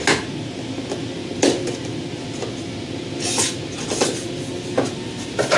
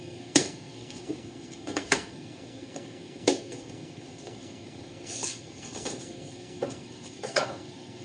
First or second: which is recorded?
first